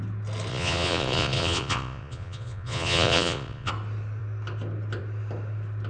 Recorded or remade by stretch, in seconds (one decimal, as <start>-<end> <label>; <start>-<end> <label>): 0.0-0.5 recorded; 0.5-3.7 remade; 3.7-5.9 recorded